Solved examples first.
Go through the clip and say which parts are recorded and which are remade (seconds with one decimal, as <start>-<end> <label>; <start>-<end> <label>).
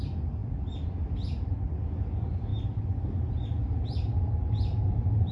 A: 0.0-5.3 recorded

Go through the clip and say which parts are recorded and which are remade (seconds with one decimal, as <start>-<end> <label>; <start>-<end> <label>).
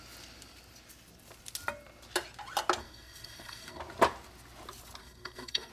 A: 0.0-2.8 recorded; 2.8-3.8 remade; 3.8-5.0 recorded; 5.0-5.7 remade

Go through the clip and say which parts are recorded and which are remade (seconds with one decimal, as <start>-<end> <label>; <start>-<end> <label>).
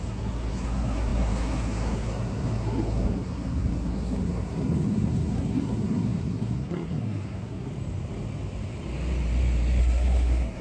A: 0.0-7.7 remade; 7.7-9.8 recorded; 9.8-10.6 remade